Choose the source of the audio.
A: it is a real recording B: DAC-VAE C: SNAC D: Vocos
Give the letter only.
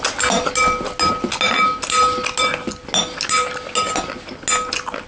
A